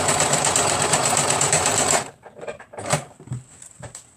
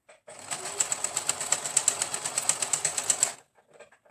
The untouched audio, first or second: second